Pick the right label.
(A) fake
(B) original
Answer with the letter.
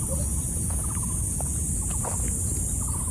B